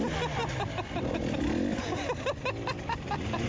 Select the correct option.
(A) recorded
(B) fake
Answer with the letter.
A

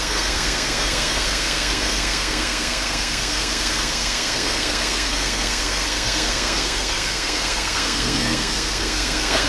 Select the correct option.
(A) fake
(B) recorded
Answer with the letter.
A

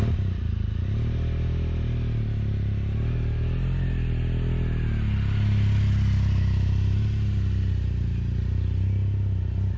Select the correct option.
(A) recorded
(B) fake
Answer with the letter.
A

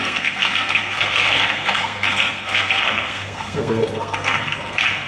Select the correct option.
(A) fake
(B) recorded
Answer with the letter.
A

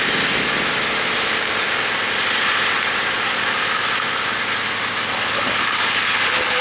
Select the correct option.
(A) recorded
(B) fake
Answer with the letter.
A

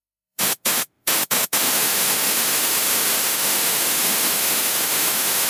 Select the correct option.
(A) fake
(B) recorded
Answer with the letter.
A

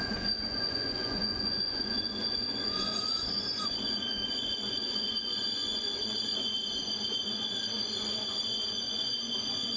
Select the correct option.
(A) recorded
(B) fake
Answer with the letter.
B